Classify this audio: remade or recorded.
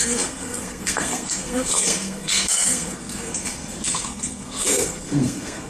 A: remade